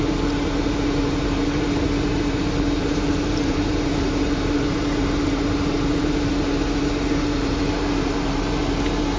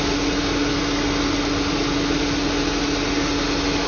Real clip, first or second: second